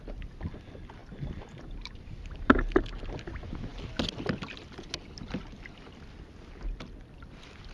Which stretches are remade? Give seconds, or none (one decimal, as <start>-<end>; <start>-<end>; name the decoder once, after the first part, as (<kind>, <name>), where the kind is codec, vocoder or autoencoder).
1.0-3.2 (vocoder, BigVGAN v2)